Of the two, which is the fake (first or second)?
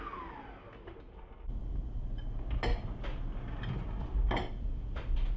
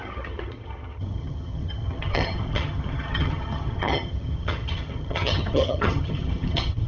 second